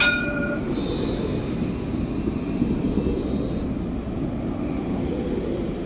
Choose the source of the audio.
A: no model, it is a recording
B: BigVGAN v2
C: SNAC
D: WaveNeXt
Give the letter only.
A